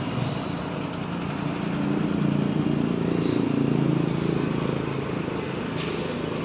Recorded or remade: recorded